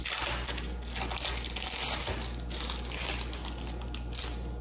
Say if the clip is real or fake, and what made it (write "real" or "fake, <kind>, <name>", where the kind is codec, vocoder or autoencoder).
real